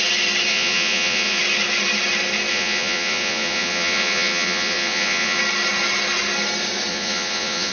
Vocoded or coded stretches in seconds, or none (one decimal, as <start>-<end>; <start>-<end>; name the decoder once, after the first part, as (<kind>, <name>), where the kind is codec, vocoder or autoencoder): 0.5-1.4 (vocoder, Vocos); 2.5-5.4; 6.9-7.7